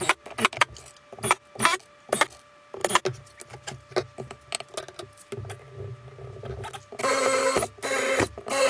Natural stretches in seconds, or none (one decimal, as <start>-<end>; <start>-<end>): 0.0-8.7